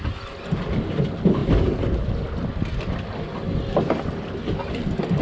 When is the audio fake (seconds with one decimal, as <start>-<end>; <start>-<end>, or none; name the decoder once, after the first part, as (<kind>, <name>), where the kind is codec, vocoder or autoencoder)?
none

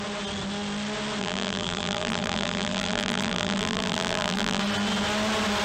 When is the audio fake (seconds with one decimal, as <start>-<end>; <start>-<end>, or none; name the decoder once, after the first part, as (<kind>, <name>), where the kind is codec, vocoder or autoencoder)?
1.2-4.6 (vocoder, BigVGAN v2)

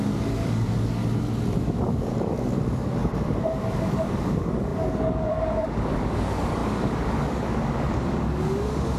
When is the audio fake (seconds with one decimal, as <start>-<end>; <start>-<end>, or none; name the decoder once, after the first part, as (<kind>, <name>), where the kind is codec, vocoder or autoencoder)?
0.0-1.0 (codec, DAC); 1.6-9.0

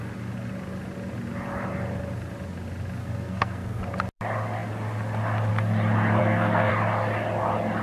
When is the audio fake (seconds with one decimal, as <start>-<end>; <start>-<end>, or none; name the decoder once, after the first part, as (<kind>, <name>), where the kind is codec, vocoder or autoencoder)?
3.0-3.8 (codec, SNAC); 6.2-6.7